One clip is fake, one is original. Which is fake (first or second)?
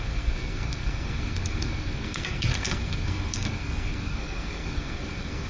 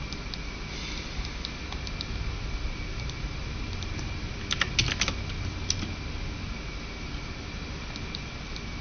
first